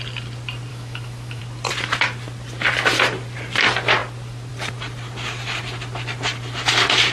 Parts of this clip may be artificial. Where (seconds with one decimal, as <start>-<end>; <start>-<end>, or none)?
0.7-1.4